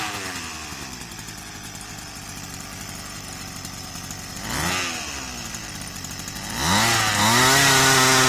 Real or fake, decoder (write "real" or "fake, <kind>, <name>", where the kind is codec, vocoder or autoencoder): real